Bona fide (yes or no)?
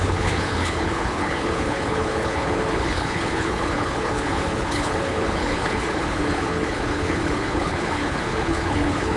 no